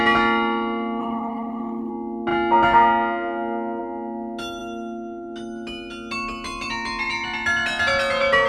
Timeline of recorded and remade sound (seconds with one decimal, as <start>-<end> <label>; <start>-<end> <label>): 0.0-1.0 recorded; 1.0-1.9 remade; 1.9-8.5 recorded